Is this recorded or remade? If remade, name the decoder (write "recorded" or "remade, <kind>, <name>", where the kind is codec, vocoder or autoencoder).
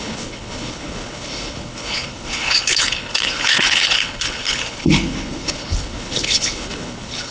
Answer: remade, codec, HILCodec